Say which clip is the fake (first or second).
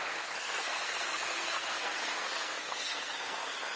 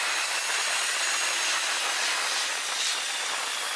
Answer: first